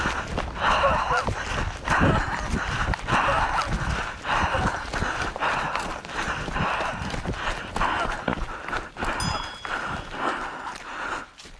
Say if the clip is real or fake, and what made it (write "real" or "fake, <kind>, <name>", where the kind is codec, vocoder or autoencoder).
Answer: real